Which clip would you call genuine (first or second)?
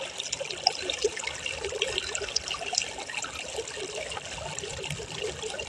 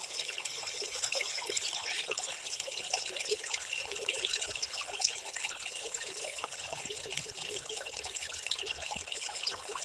first